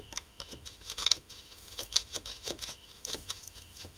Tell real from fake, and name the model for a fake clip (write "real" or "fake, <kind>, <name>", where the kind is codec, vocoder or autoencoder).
fake, autoencoder, DAC-VAE